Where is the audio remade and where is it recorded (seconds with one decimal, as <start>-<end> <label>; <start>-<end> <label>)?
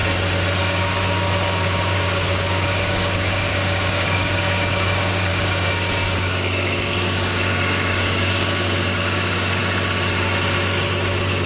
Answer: 0.0-0.6 recorded; 0.6-9.6 remade; 9.6-11.5 recorded